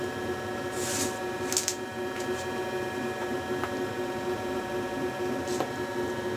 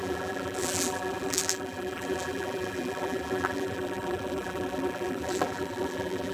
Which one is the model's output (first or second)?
second